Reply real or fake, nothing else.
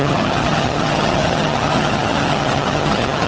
fake